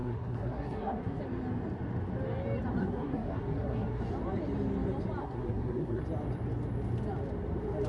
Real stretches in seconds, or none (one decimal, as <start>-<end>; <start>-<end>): 1.2-2.8; 4.0-5.2; 6.0-7.9